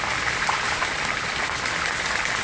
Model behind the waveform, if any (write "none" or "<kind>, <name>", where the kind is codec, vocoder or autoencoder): none